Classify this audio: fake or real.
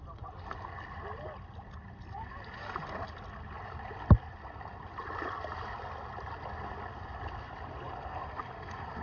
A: real